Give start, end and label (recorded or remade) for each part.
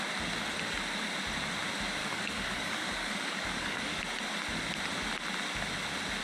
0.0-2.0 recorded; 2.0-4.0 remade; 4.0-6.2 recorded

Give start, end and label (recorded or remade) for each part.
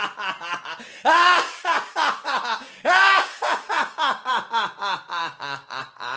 0.0-1.2 recorded; 1.2-4.3 remade; 4.3-5.2 recorded; 5.2-5.8 remade; 5.8-6.2 recorded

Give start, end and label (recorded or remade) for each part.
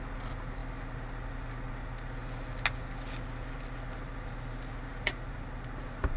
0.0-6.2 recorded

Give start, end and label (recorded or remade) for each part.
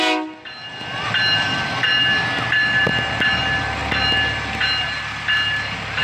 0.0-6.0 recorded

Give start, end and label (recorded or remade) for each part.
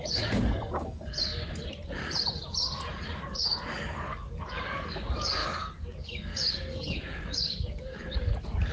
0.0-1.4 remade; 1.4-3.2 recorded; 3.2-8.7 remade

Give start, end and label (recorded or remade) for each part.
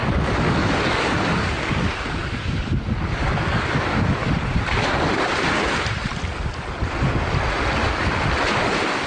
0.0-4.3 remade; 4.3-9.1 recorded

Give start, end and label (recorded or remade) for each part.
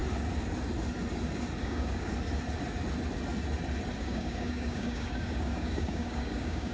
0.0-1.6 recorded; 1.6-2.1 remade; 2.1-4.0 recorded; 4.0-6.7 remade